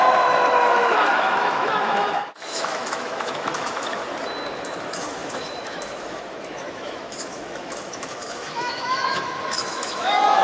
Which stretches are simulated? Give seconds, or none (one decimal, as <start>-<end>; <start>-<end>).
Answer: 0.0-4.0; 4.5-10.4